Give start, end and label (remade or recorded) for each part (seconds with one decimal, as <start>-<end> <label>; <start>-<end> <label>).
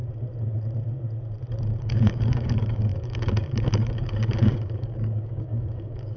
0.0-1.8 recorded; 1.8-6.2 remade